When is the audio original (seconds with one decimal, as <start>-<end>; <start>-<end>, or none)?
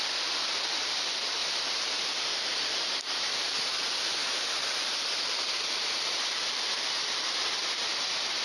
0.0-1.4; 2.7-8.4